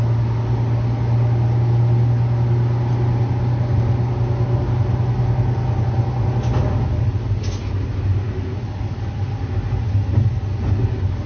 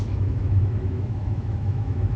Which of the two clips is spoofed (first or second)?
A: second